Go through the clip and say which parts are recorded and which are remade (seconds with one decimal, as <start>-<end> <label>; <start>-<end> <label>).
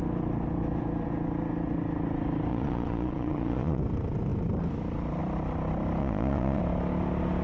0.0-2.5 recorded; 2.5-3.8 remade; 3.8-6.0 recorded; 6.0-6.6 remade; 6.6-7.4 recorded